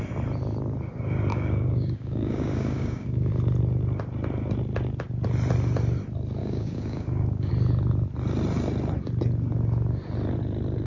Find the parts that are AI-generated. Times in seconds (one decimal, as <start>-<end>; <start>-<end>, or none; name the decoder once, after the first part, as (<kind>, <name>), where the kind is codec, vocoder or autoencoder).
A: 1.3-3.3 (codec, DAC); 6.4-7.5